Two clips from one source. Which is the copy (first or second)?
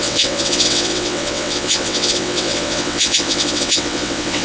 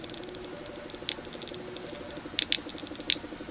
first